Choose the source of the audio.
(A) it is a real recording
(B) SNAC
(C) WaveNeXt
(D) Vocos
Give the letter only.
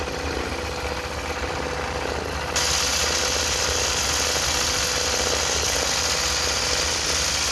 A